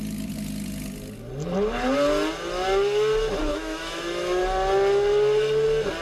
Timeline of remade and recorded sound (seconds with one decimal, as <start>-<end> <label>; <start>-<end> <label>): 0.0-3.5 recorded; 3.5-4.4 remade; 4.4-6.0 recorded